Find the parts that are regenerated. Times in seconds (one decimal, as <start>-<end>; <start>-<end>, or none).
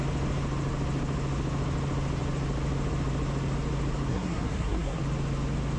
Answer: 4.1-5.0